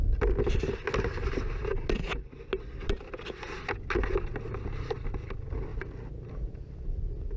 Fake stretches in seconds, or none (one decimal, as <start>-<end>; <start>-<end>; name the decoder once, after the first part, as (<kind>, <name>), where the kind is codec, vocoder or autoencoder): none